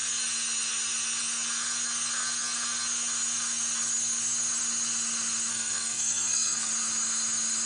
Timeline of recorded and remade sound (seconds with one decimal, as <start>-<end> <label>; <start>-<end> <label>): 0.0-5.5 recorded; 5.5-6.7 remade; 6.7-7.7 recorded